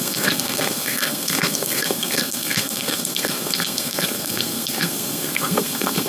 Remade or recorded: remade